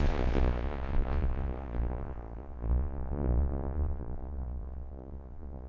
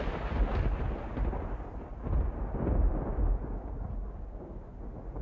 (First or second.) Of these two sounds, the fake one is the first